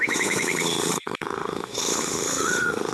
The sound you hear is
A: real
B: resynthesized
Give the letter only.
B